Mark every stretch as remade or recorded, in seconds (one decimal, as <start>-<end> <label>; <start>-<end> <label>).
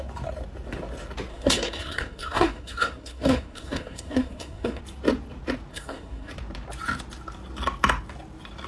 0.0-1.3 recorded; 1.3-4.8 remade; 4.8-5.7 recorded; 5.7-6.3 remade; 6.3-8.7 recorded